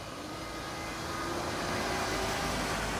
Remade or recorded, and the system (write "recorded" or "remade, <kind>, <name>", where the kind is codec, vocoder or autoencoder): recorded